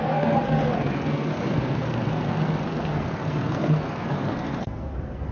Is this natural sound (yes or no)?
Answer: no